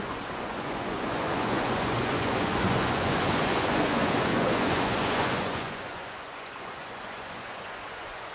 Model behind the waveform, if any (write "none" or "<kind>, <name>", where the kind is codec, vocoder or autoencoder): vocoder, Vocos